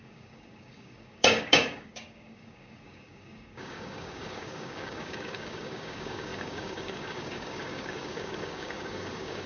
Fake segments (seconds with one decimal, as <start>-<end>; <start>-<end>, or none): 0.0-9.5